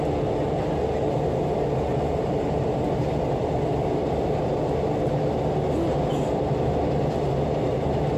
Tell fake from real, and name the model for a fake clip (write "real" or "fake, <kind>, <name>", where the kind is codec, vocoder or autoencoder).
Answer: real